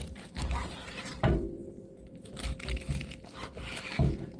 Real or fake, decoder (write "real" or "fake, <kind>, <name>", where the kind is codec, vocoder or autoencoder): fake, vocoder, BigVGAN v2